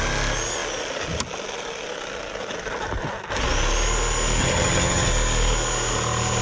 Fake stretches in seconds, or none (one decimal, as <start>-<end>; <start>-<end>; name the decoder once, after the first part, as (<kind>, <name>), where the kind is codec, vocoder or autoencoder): 4.4-5.1 (vocoder, HiFi-GAN)